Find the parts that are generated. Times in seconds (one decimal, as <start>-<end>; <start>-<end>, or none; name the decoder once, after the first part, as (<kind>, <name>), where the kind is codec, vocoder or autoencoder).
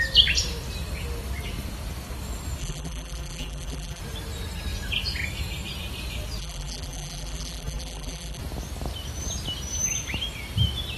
2.6-4.0 (vocoder, BigVGAN v2); 6.4-8.4